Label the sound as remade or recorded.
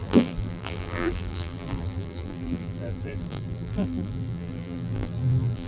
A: remade